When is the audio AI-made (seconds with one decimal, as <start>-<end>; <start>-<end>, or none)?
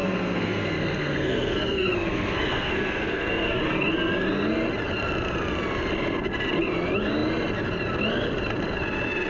0.0-3.6